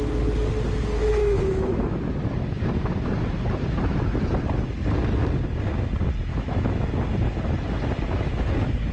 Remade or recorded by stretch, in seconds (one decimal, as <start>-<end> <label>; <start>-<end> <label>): 0.0-1.2 recorded; 1.2-2.0 remade; 2.0-6.3 recorded; 6.3-6.9 remade; 6.9-8.9 recorded